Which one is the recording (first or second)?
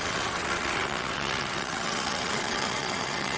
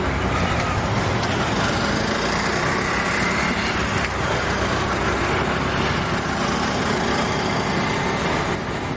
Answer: second